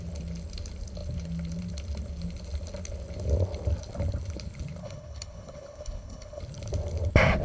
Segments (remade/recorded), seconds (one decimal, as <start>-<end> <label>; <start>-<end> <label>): 0.0-4.8 recorded; 4.8-6.4 remade; 6.4-7.4 recorded